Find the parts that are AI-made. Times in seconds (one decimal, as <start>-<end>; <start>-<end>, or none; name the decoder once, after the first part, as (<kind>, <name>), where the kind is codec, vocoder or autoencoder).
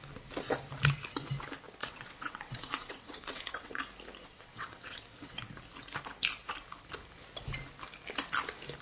1.8-3.8 (vocoder, WaveNeXt); 4.2-5.4